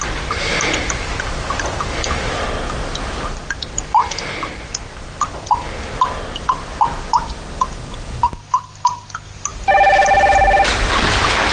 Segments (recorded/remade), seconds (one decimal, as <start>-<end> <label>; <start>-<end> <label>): 0.0-11.5 recorded